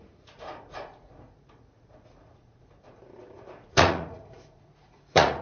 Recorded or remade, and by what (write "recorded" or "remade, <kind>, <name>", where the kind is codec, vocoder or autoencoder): remade, vocoder, Vocos